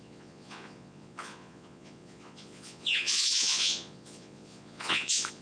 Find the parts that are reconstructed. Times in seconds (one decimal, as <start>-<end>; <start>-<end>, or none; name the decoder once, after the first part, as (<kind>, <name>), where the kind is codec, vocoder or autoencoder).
0.0-5.4 (vocoder, Vocos)